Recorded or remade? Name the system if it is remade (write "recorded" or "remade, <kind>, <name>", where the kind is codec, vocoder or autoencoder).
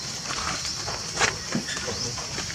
recorded